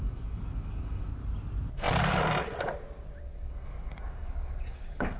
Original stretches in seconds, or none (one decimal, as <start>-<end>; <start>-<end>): 1.1-3.2